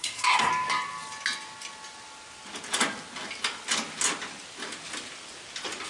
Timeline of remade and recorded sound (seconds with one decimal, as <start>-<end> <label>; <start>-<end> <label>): 0.0-0.5 remade; 0.5-5.9 recorded